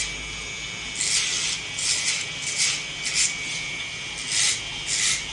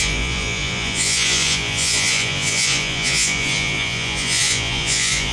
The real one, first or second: first